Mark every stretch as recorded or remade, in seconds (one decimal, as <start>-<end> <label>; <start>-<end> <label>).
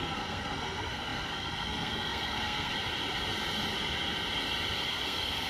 0.0-2.7 remade; 2.7-4.9 recorded; 4.9-5.5 remade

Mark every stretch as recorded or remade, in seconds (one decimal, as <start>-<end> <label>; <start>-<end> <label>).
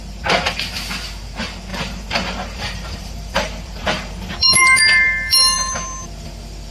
0.0-1.7 recorded; 1.7-5.7 remade; 5.7-6.7 recorded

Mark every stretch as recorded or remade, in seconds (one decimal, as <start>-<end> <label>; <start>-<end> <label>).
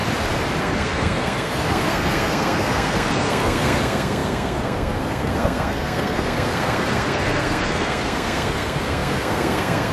0.0-0.6 recorded; 0.6-9.9 remade